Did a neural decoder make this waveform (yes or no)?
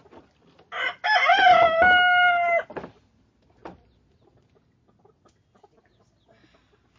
no